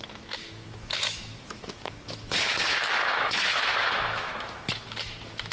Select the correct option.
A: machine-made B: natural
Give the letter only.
A